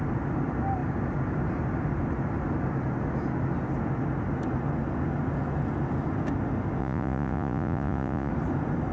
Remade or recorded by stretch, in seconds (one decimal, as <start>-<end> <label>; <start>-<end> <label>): 0.0-6.8 recorded; 6.8-8.3 remade; 8.3-8.9 recorded